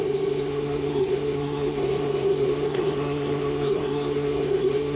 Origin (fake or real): fake